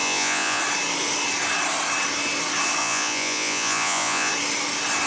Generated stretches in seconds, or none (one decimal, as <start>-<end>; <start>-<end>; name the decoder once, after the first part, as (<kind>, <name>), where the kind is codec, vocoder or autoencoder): 0.0-0.6 (vocoder, Vocos); 2.8-4.3